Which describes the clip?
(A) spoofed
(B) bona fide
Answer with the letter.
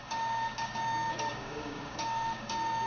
A